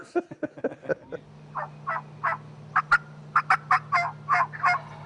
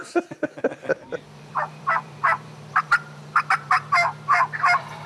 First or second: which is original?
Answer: first